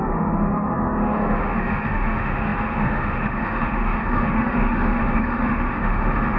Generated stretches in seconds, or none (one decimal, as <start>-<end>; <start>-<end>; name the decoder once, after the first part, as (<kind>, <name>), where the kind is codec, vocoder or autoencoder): 0.0-6.4 (autoencoder, DAC-VAE)